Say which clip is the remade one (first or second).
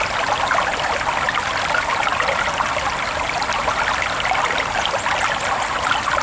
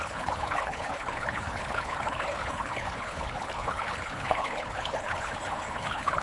second